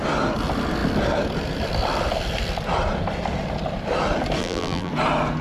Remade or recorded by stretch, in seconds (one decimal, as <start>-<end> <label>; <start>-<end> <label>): 0.0-4.4 recorded; 4.4-4.9 remade; 4.9-5.4 recorded